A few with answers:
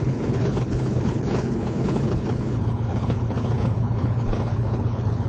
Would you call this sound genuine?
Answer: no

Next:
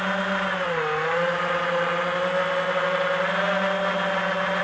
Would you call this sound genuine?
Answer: yes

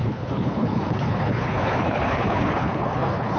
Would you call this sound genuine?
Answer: no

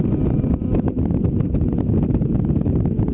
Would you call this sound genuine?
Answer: yes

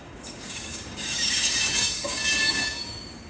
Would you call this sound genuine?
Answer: no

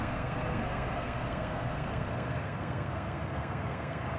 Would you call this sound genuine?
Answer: no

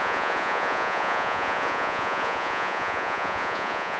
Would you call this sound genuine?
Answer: no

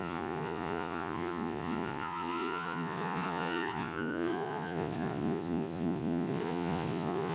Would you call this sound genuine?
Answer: no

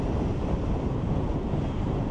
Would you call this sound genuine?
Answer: yes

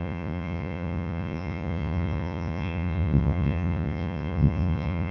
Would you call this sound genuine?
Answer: no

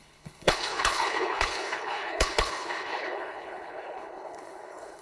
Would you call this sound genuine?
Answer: no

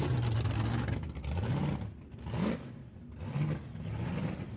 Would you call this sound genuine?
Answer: yes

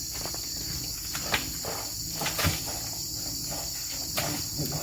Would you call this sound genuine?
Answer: no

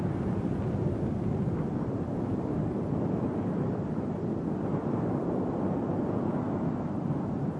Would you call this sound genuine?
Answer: no